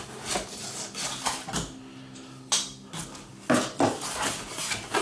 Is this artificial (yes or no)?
no